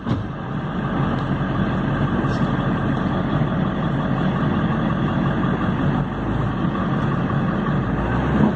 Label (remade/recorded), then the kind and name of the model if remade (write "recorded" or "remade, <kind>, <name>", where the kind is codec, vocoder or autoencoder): recorded